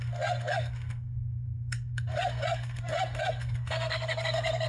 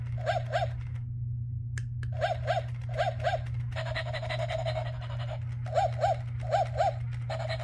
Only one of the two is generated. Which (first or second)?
first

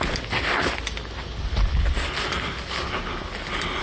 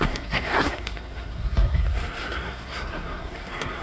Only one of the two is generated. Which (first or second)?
second